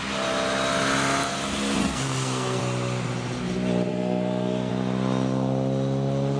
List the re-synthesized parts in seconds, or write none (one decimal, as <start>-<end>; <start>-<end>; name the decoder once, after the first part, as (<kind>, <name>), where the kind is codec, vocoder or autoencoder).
1.8-2.6 (codec, SNAC); 3.9-4.7